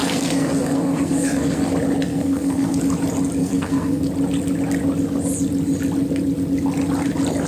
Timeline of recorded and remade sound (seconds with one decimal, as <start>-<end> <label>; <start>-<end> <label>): 0.0-1.7 remade; 1.7-2.1 recorded; 2.1-2.8 remade; 2.8-3.4 recorded; 3.4-4.0 remade; 4.0-7.5 recorded